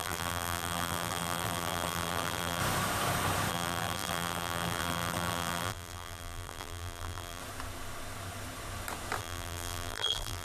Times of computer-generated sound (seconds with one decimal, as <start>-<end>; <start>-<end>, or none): 0.0-2.6; 3.5-7.4; 9.2-10.4